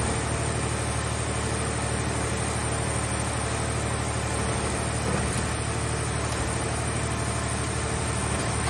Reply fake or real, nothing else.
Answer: real